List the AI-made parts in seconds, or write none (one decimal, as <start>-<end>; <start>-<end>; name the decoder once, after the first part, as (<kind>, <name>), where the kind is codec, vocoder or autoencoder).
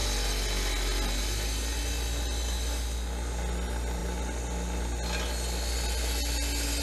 none